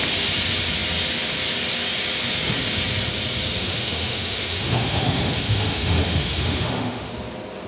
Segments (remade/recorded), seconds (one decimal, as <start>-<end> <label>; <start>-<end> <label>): 0.0-3.6 recorded; 3.6-7.1 remade; 7.1-7.7 recorded